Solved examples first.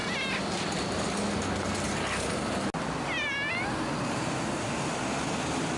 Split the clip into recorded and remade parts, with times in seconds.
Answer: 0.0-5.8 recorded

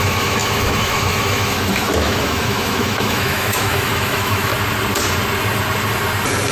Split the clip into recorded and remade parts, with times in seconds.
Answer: 0.0-4.5 remade; 4.5-6.5 recorded

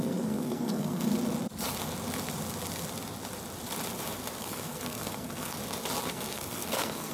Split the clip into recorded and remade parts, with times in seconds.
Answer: 0.0-1.1 remade; 1.1-4.4 recorded; 4.4-5.6 remade; 5.6-6.1 recorded; 6.1-7.1 remade

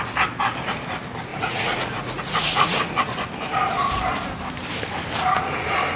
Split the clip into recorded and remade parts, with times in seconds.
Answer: 0.0-1.3 recorded; 1.3-2.8 remade; 2.8-6.0 recorded

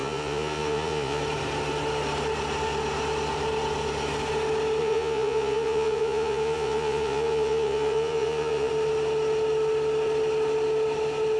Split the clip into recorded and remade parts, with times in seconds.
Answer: 0.0-1.2 remade; 1.2-4.8 recorded; 4.8-8.7 remade; 8.7-11.4 recorded

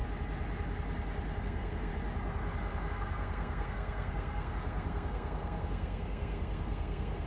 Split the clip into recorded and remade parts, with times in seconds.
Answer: 0.0-1.4 recorded; 1.4-1.9 remade; 1.9-2.9 recorded; 2.9-7.3 remade